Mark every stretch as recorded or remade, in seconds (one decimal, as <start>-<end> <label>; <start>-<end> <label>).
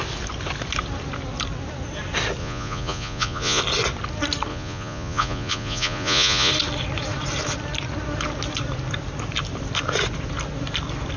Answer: 0.0-2.4 recorded; 2.4-3.6 remade; 3.6-4.5 recorded; 4.5-6.5 remade; 6.5-11.2 recorded